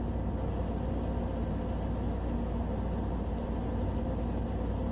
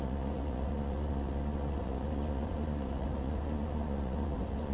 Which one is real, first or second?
first